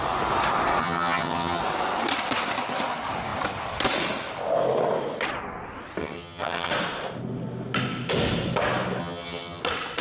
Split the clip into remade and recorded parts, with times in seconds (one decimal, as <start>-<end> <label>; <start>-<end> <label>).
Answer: 0.0-0.8 recorded; 0.8-1.6 remade; 1.6-6.0 recorded; 6.0-6.7 remade; 6.7-9.0 recorded; 9.0-9.6 remade; 9.6-10.0 recorded